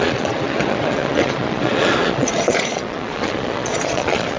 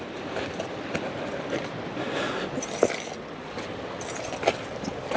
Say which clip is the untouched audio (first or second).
second